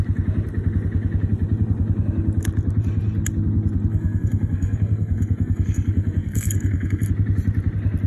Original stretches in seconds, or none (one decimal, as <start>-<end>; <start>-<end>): 0.0-3.9; 7.1-8.1

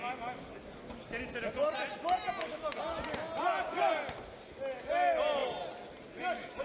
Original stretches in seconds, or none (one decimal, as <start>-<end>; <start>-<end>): 0.0-6.6